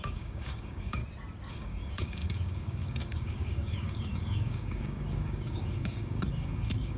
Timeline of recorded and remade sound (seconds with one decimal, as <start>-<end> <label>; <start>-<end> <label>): 0.0-1.0 remade; 1.0-1.5 recorded; 1.5-7.0 remade